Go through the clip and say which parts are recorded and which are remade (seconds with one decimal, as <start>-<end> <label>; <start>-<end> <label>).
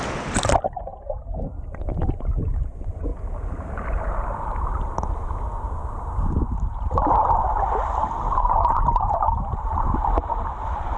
0.0-0.9 remade; 0.9-1.8 recorded; 1.8-3.1 remade; 3.1-5.8 recorded; 5.8-11.0 remade